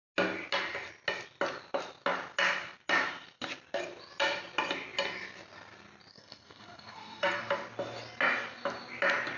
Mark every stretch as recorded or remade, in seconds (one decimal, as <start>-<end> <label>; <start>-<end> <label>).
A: 0.0-6.1 recorded; 6.1-7.4 remade; 7.4-9.4 recorded